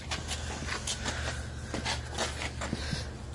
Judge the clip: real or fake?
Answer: real